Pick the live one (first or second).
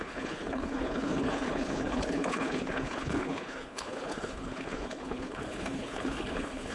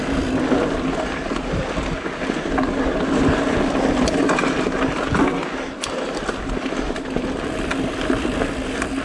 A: second